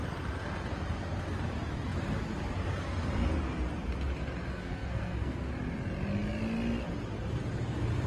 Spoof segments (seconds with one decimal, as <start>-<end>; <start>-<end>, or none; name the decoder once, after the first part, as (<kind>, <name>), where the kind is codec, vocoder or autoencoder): 4.5-5.5 (codec, SNAC)